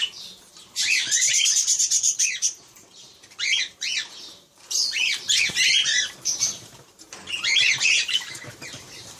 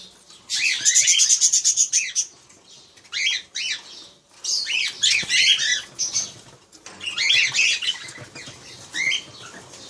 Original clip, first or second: second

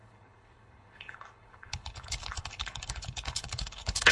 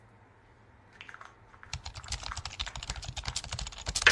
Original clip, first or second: second